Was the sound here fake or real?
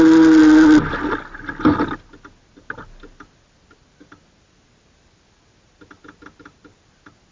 real